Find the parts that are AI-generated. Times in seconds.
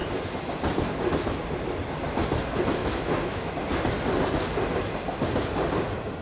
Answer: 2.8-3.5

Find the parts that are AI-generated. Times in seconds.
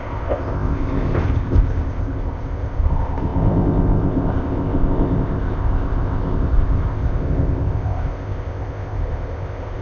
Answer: 0.0-9.8